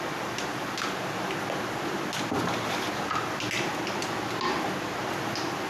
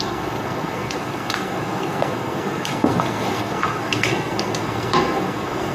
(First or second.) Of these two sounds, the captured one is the first